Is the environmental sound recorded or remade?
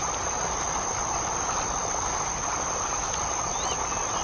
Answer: recorded